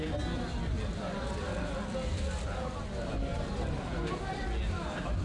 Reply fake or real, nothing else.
real